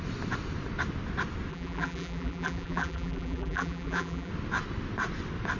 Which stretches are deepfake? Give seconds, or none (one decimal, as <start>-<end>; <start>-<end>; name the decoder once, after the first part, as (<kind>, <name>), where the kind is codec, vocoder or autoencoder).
1.5-4.3 (vocoder, BigVGAN v2)